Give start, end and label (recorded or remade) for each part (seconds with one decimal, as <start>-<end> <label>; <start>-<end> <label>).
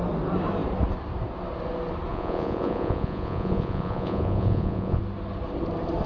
0.0-2.1 recorded; 2.1-5.0 remade; 5.0-6.1 recorded